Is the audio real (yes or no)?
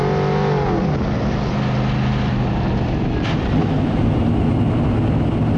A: yes